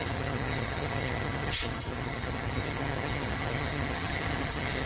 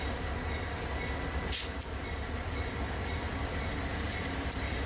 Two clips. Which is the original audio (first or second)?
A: second